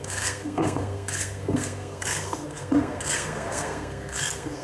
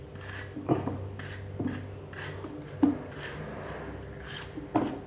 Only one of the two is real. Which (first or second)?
second